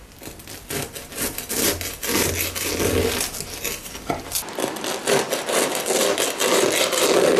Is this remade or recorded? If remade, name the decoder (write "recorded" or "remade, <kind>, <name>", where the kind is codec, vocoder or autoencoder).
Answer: recorded